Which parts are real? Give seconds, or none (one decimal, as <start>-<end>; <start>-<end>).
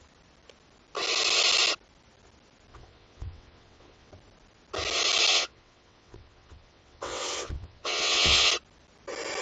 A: 0.0-2.7; 4.1-5.3; 8.5-9.4